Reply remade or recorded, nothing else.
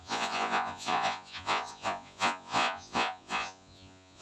remade